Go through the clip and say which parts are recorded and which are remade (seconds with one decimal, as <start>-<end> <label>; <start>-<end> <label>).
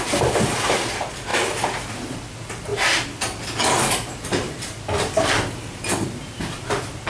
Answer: 0.0-7.1 recorded